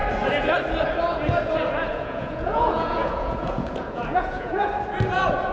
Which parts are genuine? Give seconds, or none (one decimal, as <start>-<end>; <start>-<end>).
0.0-1.9; 4.7-5.5